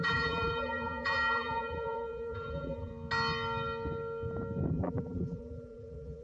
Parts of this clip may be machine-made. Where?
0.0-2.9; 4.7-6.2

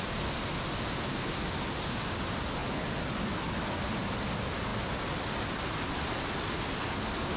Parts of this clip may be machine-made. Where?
none

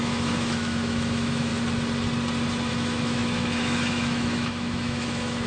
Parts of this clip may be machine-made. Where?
0.0-1.5; 2.7-5.5